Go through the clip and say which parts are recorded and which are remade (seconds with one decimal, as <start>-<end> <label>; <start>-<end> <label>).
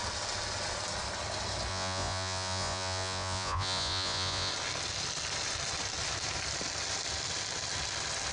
0.0-1.7 recorded; 1.7-4.5 remade; 4.5-8.3 recorded